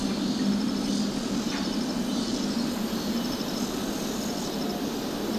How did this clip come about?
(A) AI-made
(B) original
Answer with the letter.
B